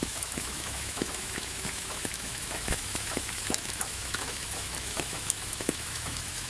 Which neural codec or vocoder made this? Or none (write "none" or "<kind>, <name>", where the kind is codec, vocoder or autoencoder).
autoencoder, DAC-VAE